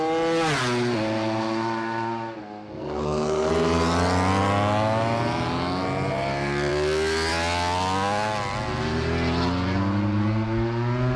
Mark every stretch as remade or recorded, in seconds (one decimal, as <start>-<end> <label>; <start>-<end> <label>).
0.0-2.4 recorded; 2.4-3.5 remade; 3.5-11.2 recorded